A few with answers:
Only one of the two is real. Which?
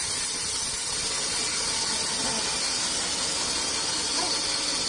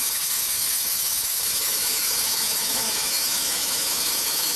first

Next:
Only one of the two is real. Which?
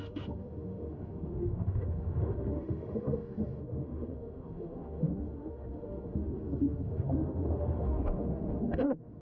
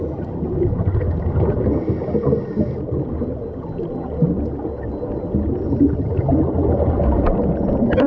second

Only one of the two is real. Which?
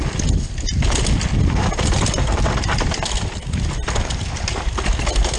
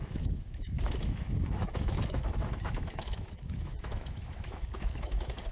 first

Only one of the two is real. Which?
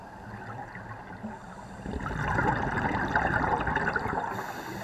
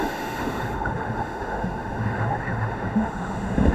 first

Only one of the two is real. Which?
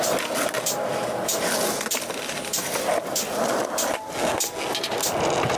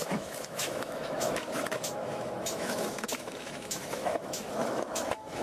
first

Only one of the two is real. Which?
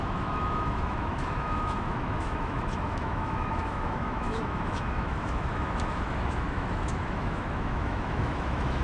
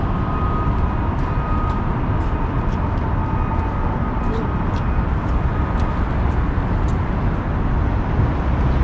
second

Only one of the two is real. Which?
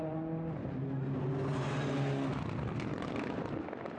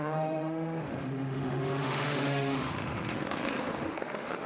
first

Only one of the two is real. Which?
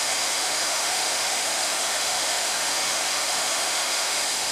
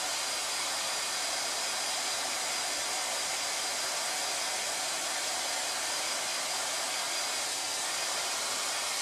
second